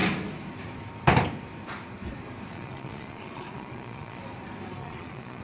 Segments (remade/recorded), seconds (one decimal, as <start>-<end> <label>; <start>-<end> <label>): 0.0-2.5 recorded; 2.5-4.2 remade; 4.2-4.8 recorded; 4.8-5.4 remade